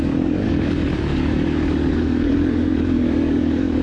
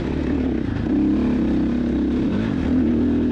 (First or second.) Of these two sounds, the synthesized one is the first